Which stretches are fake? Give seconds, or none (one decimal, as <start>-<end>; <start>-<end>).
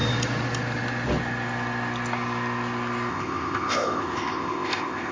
3.1-5.1